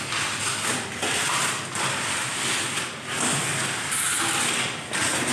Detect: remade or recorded recorded